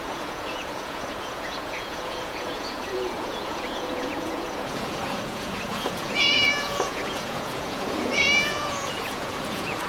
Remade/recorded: remade